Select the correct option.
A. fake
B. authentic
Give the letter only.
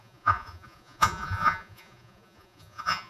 A